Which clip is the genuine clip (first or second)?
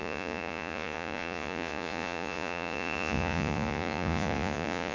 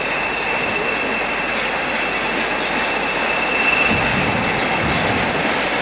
second